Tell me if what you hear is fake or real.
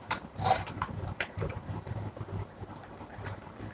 fake